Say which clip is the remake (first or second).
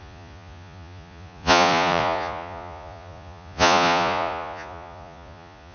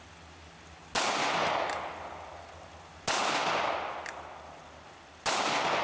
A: first